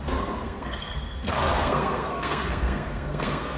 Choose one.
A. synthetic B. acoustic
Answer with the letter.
A